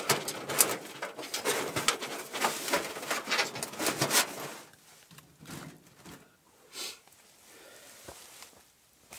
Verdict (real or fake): real